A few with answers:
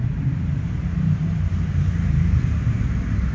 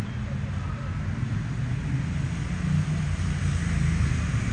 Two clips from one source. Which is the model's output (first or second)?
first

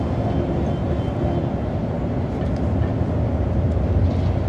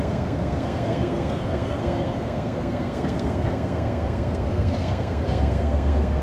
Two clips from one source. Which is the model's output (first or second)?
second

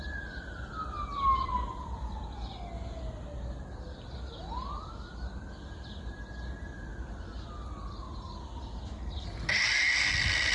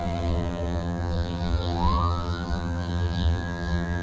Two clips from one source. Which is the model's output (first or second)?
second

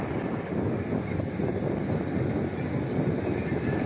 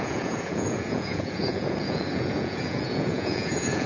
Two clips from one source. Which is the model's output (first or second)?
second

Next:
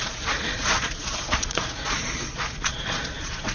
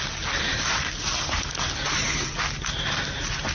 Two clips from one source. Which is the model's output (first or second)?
first